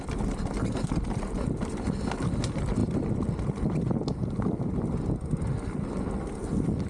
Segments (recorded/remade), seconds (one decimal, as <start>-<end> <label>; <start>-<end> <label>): 0.0-6.9 recorded